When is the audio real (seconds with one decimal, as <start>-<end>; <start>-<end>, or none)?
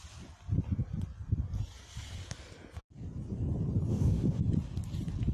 0.0-3.9; 4.4-5.3